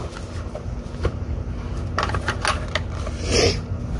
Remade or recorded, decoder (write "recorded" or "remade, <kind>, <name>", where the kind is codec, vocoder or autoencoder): recorded